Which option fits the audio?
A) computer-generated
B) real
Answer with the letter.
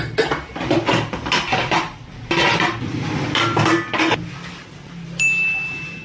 B